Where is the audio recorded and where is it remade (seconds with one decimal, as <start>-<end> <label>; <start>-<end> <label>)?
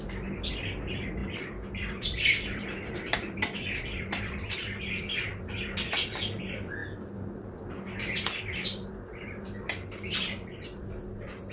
0.0-1.2 recorded; 1.2-4.8 remade; 4.8-11.5 recorded